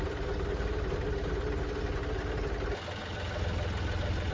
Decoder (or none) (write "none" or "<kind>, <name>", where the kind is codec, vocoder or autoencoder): none